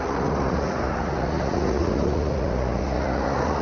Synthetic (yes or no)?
yes